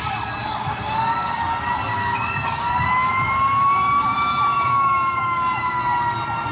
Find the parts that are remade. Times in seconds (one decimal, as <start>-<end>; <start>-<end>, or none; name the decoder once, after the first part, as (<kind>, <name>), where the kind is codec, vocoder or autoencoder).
0.5-1.4 (codec, DAC); 1.9-5.8